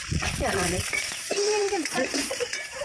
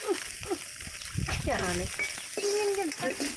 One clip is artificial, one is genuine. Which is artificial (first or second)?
first